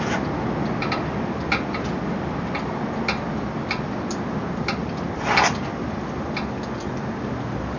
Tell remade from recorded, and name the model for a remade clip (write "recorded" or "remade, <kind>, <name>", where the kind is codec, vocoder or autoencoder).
recorded